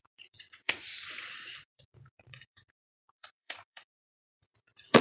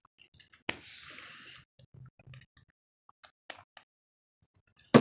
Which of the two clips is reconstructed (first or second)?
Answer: first